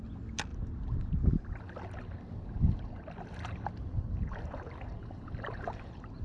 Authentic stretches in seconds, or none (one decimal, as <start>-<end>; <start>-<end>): 0.0-6.2